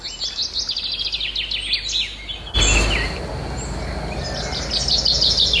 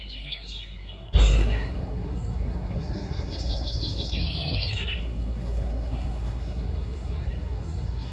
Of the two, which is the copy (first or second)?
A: second